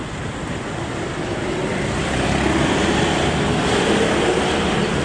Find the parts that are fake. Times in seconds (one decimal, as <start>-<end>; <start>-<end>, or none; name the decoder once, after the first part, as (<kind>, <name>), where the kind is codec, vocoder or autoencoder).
1.3-4.3 (vocoder, BigVGAN v2)